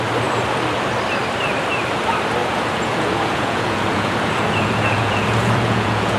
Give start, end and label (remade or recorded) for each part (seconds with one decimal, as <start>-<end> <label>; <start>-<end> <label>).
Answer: 0.0-2.4 recorded; 2.4-6.2 remade